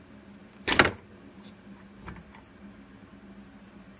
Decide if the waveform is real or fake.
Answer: real